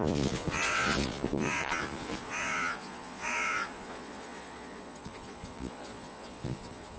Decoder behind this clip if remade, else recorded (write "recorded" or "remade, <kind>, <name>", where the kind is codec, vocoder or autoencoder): remade, vocoder, Vocos